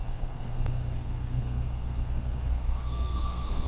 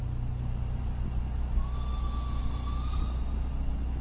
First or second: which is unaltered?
second